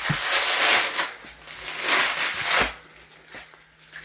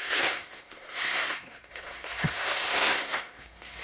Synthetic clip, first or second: second